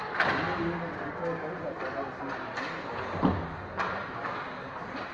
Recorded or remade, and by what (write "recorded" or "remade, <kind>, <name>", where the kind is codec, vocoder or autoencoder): recorded